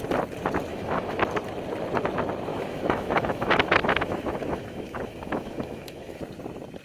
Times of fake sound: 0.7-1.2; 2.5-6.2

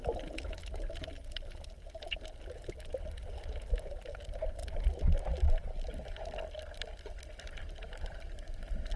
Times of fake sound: none

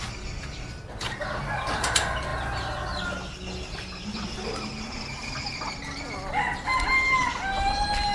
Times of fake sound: none